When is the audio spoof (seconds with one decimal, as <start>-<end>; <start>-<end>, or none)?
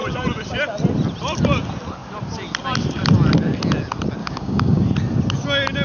4.2-4.8